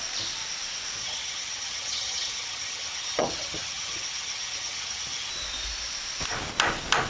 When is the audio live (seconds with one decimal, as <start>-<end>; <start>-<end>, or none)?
0.0-1.0; 5.3-7.1